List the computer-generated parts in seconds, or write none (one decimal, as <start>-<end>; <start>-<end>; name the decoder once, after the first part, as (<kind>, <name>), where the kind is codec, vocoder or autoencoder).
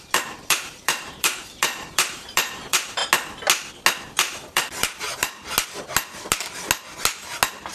0.0-3.0 (vocoder, BigVGAN v2); 4.0-5.4